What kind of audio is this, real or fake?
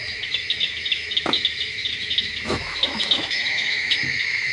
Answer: fake